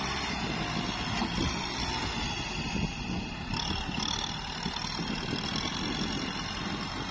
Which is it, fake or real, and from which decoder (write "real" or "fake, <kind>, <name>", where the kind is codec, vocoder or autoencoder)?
real